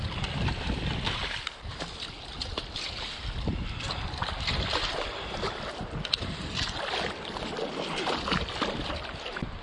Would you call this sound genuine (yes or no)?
yes